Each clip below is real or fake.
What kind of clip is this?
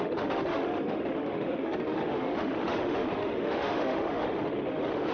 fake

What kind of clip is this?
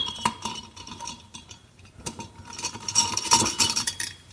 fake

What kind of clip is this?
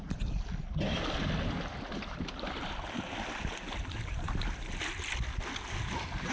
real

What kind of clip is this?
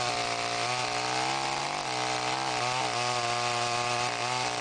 real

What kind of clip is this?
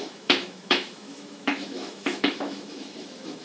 fake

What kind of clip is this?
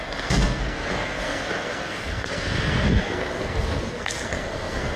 fake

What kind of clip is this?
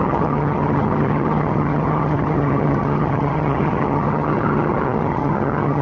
fake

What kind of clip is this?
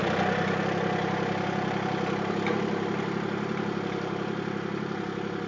real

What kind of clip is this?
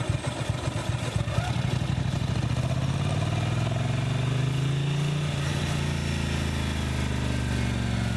real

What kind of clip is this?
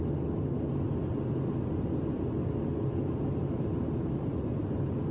real